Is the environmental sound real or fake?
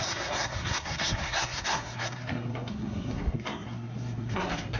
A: fake